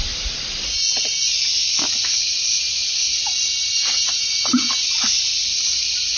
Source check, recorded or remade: recorded